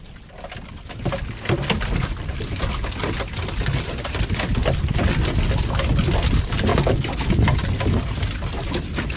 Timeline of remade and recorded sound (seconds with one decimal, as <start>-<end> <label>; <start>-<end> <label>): 0.0-6.7 recorded; 6.7-7.3 remade; 7.3-9.2 recorded